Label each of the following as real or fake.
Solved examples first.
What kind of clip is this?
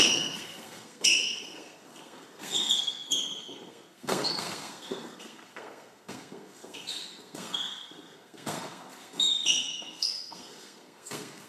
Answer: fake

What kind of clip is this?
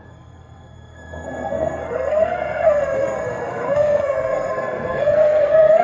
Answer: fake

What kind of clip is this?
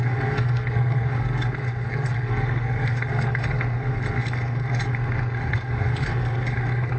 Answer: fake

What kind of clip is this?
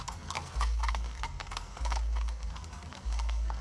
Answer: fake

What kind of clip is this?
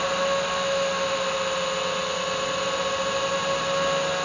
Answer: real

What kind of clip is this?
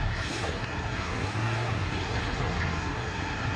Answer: fake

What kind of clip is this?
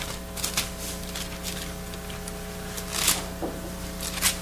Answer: real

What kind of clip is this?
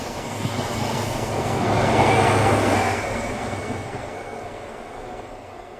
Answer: fake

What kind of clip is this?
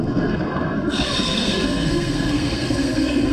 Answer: fake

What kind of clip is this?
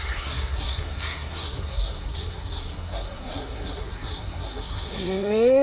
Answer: fake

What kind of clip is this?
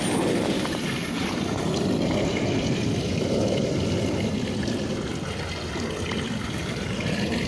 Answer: real